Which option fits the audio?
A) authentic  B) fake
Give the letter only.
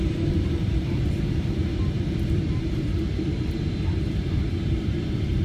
B